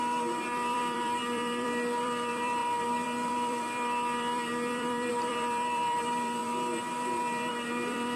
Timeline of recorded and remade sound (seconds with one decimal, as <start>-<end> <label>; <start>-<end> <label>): 0.0-8.2 remade